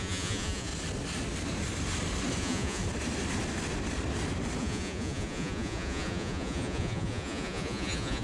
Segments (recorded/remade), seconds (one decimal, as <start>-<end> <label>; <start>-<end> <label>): 0.0-0.7 remade; 0.7-2.4 recorded; 2.4-2.8 remade; 2.8-4.6 recorded; 4.6-8.2 remade